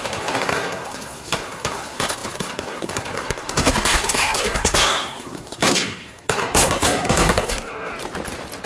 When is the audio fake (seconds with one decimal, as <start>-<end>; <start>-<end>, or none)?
0.0-7.9